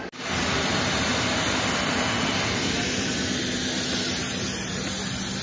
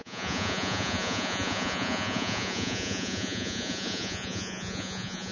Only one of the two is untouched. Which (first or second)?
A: first